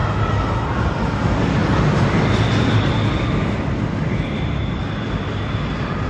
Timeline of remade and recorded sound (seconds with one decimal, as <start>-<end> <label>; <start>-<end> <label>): 0.0-6.1 recorded